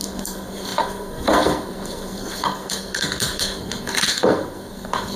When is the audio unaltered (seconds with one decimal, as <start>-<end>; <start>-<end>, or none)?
none